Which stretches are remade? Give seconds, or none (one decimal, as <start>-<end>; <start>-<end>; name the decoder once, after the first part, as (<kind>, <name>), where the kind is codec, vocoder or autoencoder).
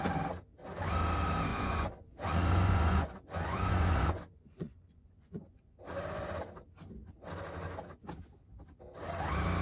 1.5-5.8 (vocoder, Vocos)